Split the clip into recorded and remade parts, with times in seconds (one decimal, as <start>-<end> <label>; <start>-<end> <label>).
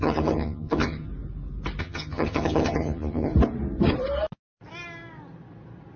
0.0-1.1 remade; 1.1-1.8 recorded; 1.8-3.3 remade; 3.3-6.0 recorded